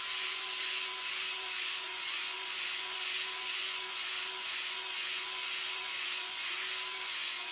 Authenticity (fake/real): fake